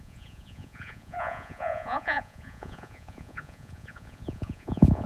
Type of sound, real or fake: fake